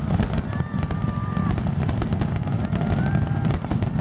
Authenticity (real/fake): real